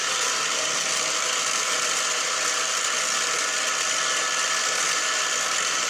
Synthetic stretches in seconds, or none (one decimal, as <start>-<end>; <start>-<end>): none